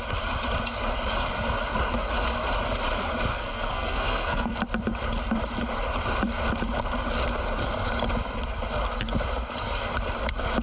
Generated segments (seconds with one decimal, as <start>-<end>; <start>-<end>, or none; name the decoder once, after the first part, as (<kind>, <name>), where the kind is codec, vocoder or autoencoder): 3.3-4.6 (codec, SNAC)